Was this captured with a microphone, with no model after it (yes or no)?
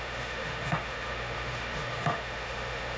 no